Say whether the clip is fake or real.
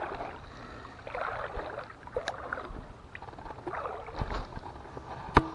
real